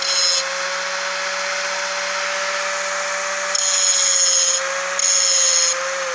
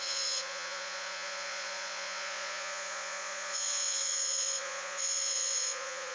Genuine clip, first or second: first